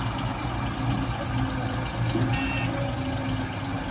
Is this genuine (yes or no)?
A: yes